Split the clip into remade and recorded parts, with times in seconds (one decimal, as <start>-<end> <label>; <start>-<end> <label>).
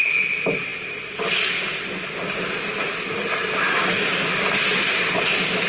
0.0-5.7 recorded